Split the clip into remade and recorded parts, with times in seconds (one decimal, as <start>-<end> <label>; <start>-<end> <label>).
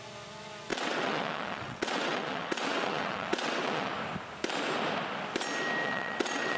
0.0-0.7 recorded; 0.7-3.9 remade; 3.9-5.8 recorded; 5.8-6.6 remade